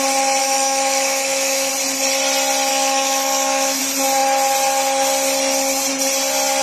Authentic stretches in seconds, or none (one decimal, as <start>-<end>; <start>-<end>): 0.0-0.4; 1.7-2.7; 3.8-6.6